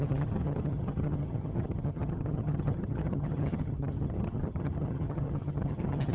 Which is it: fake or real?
fake